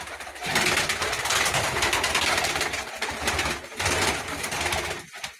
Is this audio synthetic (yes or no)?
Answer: no